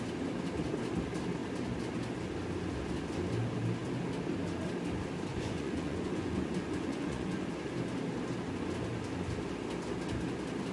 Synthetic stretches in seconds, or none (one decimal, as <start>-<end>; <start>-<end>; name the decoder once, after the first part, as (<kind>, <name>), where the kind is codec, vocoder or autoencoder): 5.3-7.5 (vocoder, Vocos)